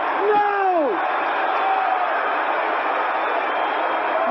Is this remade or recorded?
recorded